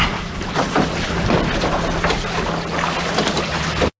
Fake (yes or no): no